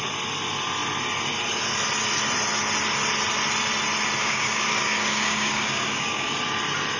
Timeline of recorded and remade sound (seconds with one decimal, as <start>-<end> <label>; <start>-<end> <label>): 0.0-4.2 recorded; 4.2-6.3 remade; 6.3-7.0 recorded